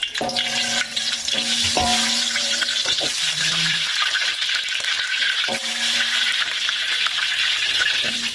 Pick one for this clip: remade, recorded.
remade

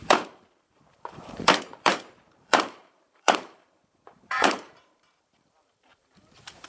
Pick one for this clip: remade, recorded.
remade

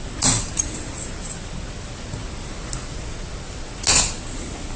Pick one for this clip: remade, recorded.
recorded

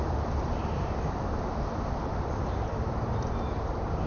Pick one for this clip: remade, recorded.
remade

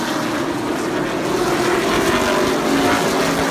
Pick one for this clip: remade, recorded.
recorded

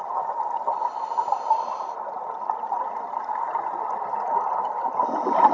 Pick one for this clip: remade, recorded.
remade